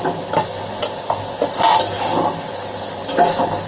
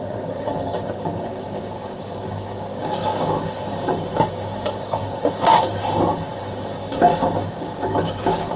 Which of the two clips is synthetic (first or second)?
second